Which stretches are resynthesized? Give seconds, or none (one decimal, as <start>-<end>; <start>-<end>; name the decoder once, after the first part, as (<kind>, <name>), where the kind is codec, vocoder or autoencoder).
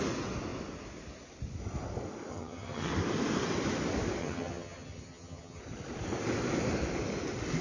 2.3-2.9 (vocoder, HiFi-GAN); 4.2-5.6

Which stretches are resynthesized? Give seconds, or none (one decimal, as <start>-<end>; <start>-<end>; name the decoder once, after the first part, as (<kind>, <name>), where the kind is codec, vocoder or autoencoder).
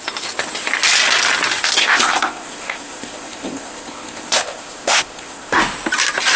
1.8-5.6 (codec, ZipCodec)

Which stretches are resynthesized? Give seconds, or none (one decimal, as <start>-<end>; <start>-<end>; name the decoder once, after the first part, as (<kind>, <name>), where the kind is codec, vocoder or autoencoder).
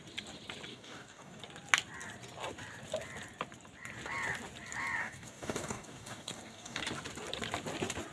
0.7-1.4 (codec, DAC); 5.0-6.8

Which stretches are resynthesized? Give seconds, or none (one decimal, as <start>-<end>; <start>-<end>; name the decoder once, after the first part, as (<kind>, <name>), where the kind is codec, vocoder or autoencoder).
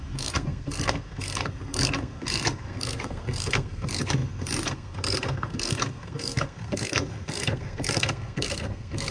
0.0-9.1 (codec, SNAC)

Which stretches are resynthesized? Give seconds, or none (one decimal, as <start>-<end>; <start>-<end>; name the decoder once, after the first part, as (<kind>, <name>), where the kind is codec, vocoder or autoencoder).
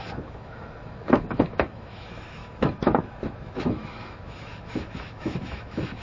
0.0-6.0 (autoencoder, DAC-VAE)